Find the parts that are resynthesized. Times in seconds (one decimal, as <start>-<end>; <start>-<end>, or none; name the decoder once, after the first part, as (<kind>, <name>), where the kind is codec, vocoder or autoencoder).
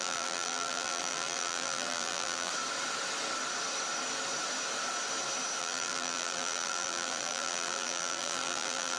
0.0-2.5 (vocoder, BigVGAN v2); 5.6-9.0